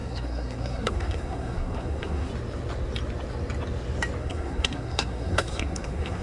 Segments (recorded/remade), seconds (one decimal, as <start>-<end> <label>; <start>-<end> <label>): 0.0-2.3 remade; 2.3-4.2 recorded; 4.2-6.2 remade